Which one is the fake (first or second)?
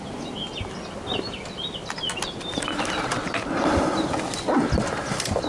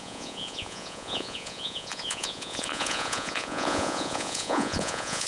second